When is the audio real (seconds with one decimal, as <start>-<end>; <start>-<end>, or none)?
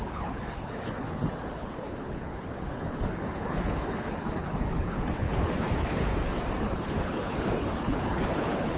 6.1-6.6